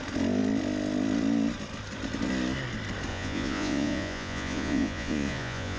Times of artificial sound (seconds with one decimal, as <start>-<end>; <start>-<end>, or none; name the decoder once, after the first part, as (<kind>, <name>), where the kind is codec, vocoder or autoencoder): 3.1-5.8 (vocoder, Vocos)